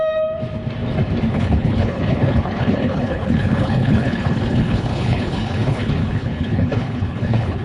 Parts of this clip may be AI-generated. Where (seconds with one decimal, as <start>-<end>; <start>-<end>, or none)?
1.3-7.6